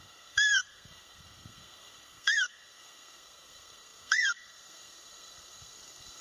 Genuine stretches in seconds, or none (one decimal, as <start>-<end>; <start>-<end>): none

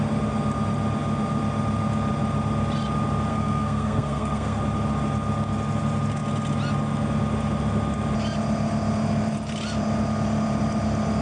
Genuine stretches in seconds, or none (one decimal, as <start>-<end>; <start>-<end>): 0.0-3.3; 4.6-11.2

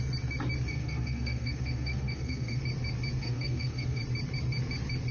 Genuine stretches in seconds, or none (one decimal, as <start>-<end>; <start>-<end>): 0.0-0.7; 2.6-3.2; 4.0-5.1

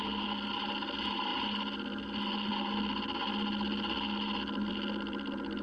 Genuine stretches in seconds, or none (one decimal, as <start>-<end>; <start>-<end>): 0.0-5.6

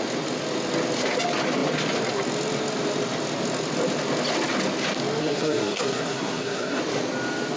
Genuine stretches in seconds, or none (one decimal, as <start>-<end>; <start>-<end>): 0.0-5.2; 6.8-7.6

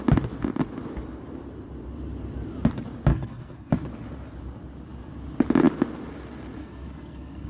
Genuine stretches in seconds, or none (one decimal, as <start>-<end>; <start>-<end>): 0.0-3.1; 3.7-6.6

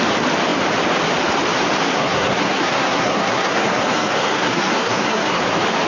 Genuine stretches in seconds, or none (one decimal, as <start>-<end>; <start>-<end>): 0.0-1.9; 5.4-5.9